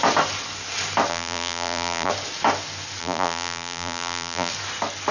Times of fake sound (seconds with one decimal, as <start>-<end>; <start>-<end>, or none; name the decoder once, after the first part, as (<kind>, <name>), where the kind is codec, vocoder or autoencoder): 1.1-2.1 (vocoder, BigVGAN v2); 3.0-4.5